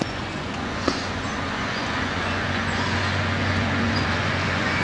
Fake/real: fake